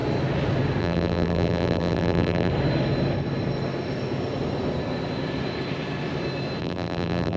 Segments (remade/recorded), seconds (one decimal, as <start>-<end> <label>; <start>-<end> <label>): 0.0-0.8 recorded; 0.8-2.5 remade; 2.5-6.6 recorded; 6.6-7.4 remade